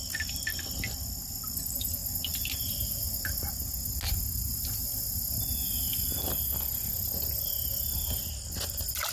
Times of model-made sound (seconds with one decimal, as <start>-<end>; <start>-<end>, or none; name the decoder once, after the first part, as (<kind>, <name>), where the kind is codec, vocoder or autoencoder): none